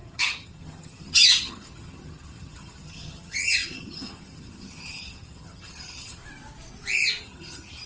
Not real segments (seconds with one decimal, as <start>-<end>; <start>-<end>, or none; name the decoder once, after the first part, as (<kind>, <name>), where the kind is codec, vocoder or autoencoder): 0.0-6.2 (vocoder, HiFi-GAN); 7.2-7.9